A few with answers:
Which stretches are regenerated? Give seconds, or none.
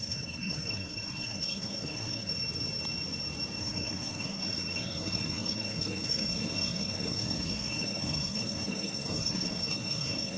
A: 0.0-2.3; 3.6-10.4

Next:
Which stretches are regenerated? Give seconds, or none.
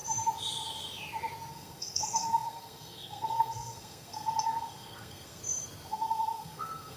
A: 1.5-5.4; 5.9-7.0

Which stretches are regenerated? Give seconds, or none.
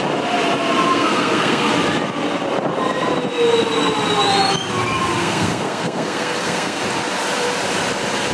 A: 0.9-1.7; 5.2-6.8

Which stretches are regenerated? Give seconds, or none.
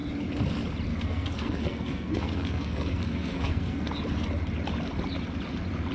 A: 0.9-3.9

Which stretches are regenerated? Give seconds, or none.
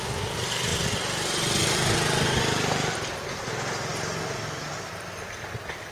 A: none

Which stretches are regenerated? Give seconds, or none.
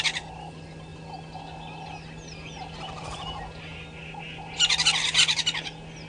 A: none